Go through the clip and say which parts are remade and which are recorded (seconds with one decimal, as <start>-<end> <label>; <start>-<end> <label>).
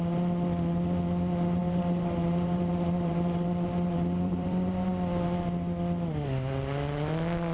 0.0-1.6 recorded; 1.6-4.9 remade; 4.9-7.5 recorded